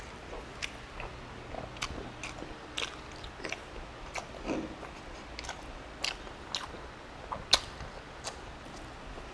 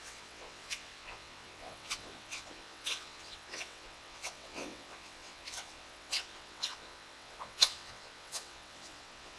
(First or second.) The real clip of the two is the first